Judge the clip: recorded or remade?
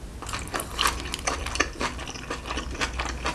recorded